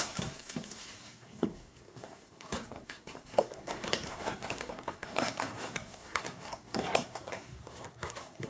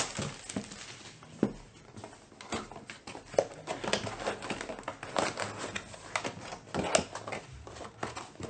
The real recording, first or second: second